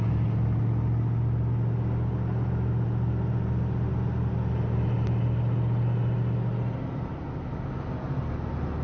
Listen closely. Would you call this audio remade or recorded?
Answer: recorded